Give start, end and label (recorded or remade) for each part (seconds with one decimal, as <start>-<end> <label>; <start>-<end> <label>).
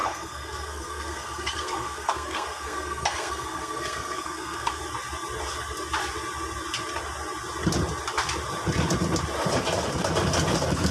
0.0-4.8 remade; 4.8-10.9 recorded